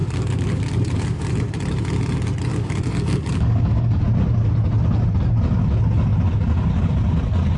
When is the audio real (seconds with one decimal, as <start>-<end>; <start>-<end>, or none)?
1.3-2.5; 4.0-7.6